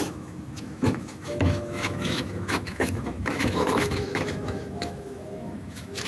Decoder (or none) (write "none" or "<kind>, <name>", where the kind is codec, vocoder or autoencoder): autoencoder, DAC-VAE